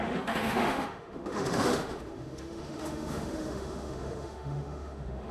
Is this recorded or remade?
remade